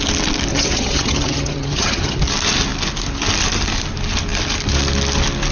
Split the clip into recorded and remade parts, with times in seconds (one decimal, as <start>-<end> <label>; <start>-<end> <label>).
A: 0.0-0.5 recorded; 0.5-2.2 remade; 2.2-5.5 recorded